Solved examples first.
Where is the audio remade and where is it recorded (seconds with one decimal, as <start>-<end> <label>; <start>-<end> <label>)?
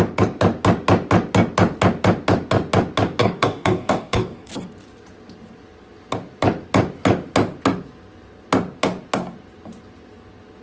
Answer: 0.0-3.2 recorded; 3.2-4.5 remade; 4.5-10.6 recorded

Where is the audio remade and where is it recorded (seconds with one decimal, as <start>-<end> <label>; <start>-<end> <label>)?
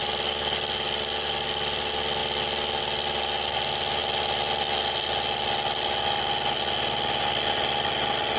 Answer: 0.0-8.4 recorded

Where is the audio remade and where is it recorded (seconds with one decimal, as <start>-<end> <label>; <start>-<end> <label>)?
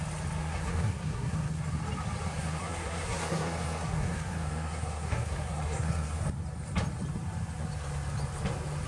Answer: 0.0-0.4 recorded; 0.4-1.6 remade; 1.6-2.4 recorded; 2.4-6.2 remade; 6.2-8.9 recorded